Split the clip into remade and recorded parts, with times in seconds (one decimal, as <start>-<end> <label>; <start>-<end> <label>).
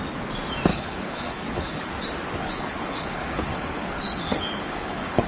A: 0.0-0.7 recorded; 0.7-1.9 remade; 1.9-2.4 recorded; 2.4-5.3 remade